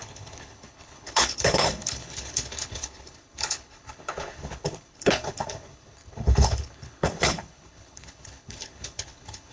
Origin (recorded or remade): remade